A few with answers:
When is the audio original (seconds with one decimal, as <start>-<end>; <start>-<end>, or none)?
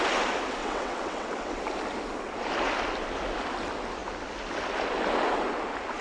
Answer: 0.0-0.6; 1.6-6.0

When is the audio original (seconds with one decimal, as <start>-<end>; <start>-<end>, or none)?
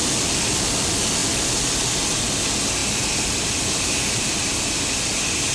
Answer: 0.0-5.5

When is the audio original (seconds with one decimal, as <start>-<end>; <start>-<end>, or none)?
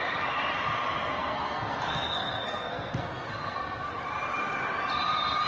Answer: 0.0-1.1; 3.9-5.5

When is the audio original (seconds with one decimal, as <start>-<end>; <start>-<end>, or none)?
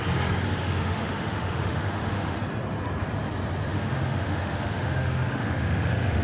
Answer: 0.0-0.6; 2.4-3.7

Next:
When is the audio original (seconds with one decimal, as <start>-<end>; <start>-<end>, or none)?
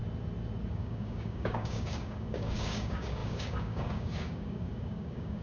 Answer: 0.0-0.7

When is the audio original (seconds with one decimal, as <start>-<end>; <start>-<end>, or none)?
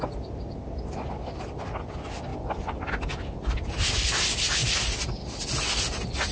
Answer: 0.0-2.3; 3.7-4.6; 5.5-6.3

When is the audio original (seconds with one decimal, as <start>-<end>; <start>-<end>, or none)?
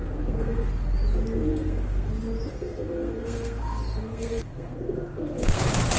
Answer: 0.7-1.5; 2.1-2.5; 5.6-6.0